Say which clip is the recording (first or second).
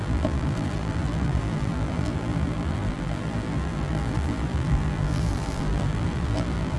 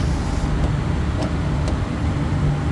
second